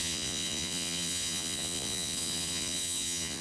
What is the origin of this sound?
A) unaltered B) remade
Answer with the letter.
B